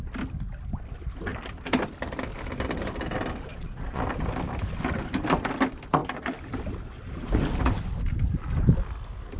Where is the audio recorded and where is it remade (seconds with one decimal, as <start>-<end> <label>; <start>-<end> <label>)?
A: 0.0-3.5 recorded; 3.5-4.0 remade; 4.0-9.4 recorded